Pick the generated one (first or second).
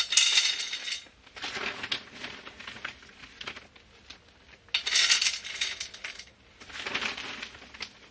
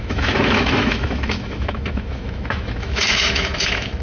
second